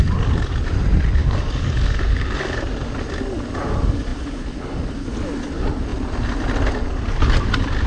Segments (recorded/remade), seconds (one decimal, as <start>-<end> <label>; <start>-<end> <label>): 0.0-1.2 recorded; 1.2-2.6 remade; 2.6-7.9 recorded